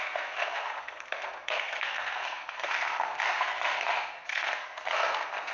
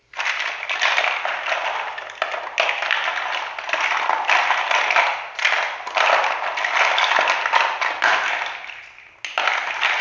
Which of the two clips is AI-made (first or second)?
first